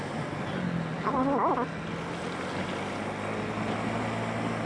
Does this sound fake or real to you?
real